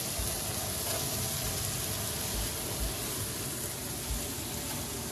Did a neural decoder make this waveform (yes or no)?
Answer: no